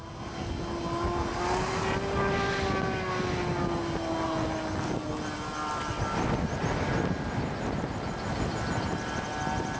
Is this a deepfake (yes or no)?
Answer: no